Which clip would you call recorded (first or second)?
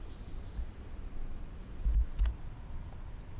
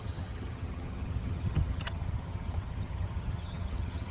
first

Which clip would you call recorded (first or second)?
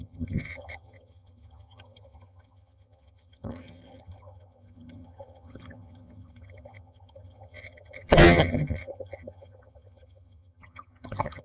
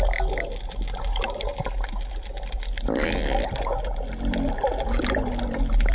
second